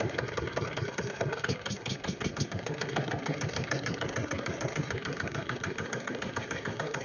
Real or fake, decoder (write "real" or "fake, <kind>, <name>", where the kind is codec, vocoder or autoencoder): fake, codec, SNAC